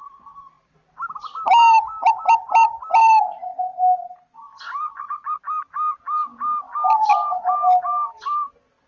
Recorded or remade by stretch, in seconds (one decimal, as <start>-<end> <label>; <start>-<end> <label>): 0.0-8.9 recorded